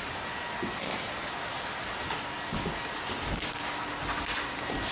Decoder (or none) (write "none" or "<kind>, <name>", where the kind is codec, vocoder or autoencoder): none